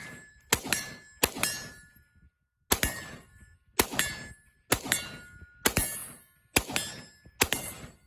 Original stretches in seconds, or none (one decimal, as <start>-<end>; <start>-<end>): 0.8-8.1